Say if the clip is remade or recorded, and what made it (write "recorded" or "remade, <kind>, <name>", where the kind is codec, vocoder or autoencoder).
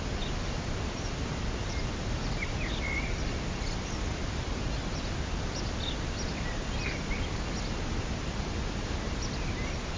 recorded